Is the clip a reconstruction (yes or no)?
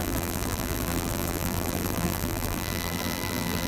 yes